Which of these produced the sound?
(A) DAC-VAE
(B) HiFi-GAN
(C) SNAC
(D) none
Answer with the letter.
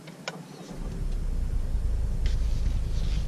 D